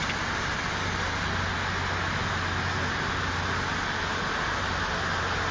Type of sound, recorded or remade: recorded